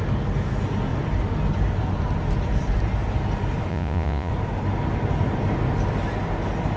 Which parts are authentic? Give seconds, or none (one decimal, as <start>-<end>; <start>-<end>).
0.0-3.7; 4.3-6.8